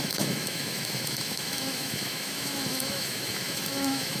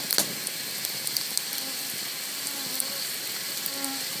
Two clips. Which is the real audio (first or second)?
second